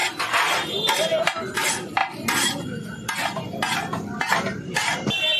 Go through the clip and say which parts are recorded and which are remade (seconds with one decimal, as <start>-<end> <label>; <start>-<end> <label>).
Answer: 0.0-1.0 recorded; 1.0-2.0 remade; 2.0-4.3 recorded; 4.3-5.4 remade